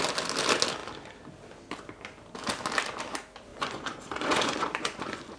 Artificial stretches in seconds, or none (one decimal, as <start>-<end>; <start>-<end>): 3.5-5.4